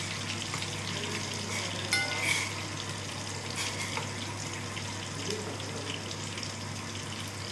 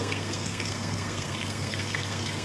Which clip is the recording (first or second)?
first